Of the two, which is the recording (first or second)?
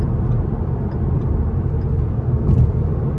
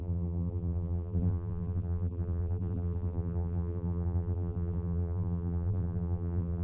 first